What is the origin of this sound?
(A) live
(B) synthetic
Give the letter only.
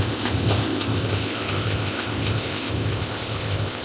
B